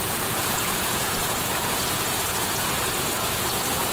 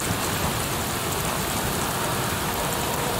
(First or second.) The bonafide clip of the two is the second